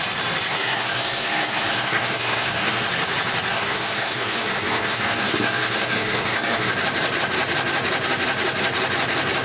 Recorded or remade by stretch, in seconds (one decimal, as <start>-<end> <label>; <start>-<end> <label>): 0.0-0.5 recorded; 0.5-2.9 remade; 2.9-3.5 recorded; 3.5-6.7 remade; 6.7-9.4 recorded